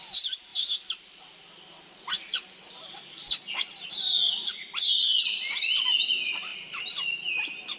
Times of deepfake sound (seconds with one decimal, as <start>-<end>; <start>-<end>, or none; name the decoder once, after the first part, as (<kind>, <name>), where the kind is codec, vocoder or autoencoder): none